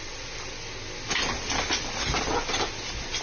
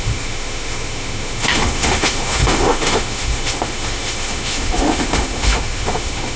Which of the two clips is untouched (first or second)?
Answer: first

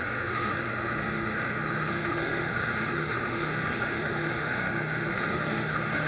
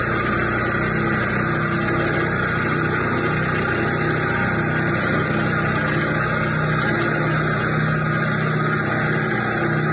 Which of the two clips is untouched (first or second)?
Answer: second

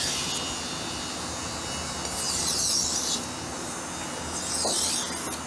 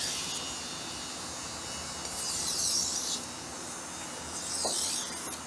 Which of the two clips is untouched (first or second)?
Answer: first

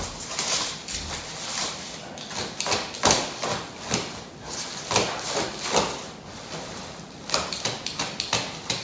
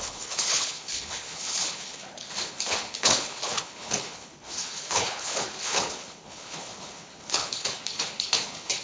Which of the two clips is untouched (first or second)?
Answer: first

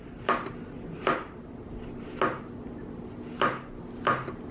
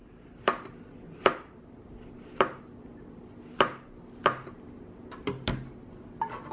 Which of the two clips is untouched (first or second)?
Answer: first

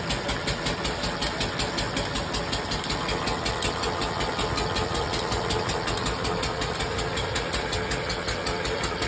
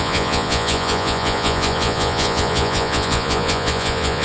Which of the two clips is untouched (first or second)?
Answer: first